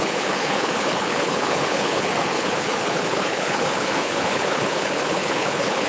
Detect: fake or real fake